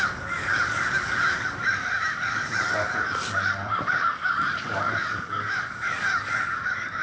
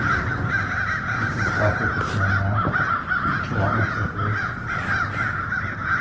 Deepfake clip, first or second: first